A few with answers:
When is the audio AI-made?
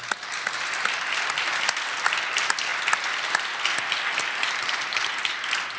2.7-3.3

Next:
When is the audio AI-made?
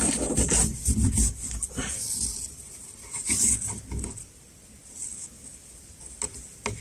none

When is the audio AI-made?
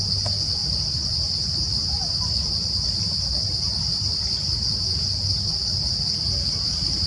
none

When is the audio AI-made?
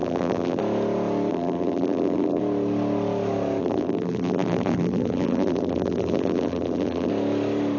0.0-0.6; 1.3-2.4; 3.6-7.1